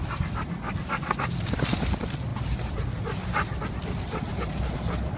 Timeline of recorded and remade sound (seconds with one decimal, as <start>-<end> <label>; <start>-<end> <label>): 0.0-5.2 remade